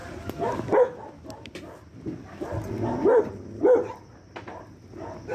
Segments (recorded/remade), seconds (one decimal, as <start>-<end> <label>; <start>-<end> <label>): 0.0-5.3 recorded